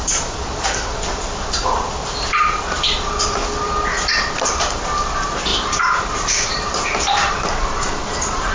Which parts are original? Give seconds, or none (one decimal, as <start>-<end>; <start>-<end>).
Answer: 3.4-4.5